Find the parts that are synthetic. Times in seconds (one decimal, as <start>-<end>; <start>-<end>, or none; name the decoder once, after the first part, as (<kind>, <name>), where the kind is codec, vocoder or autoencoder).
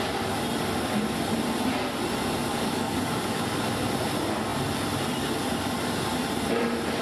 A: 2.5-3.4 (codec, DAC)